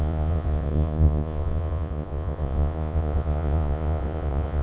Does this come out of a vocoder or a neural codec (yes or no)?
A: yes